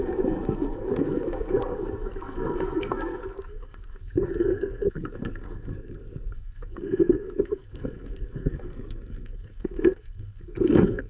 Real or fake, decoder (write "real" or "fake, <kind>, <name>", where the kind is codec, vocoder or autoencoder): fake, codec, SNAC